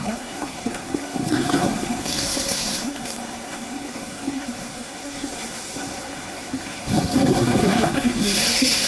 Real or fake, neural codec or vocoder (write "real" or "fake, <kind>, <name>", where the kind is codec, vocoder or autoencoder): fake, codec, SNAC